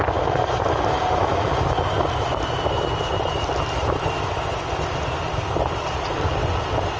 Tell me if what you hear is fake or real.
real